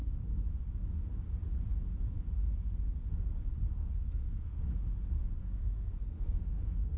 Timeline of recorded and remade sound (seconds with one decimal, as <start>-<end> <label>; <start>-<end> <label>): 0.0-3.8 recorded; 3.8-4.6 remade; 4.6-5.4 recorded; 5.4-7.0 remade